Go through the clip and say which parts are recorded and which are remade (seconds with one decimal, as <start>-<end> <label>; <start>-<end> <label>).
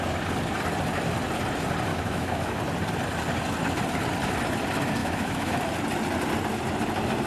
0.0-1.9 recorded; 1.9-2.6 remade; 2.6-5.0 recorded; 5.0-5.5 remade; 5.5-7.3 recorded